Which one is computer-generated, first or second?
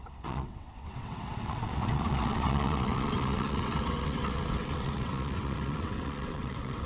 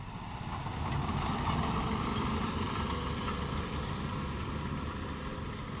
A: first